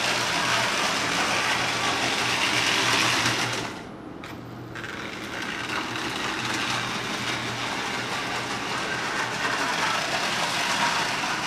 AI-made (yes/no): no